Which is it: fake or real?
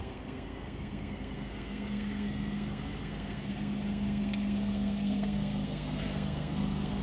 fake